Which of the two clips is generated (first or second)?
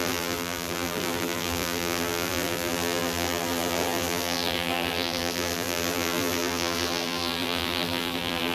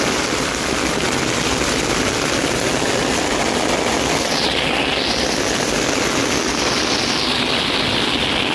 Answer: first